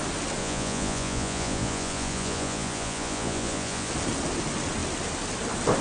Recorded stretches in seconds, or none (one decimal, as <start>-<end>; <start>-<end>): 0.0-0.4; 3.9-5.8